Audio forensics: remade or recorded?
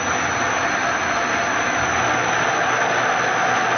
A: recorded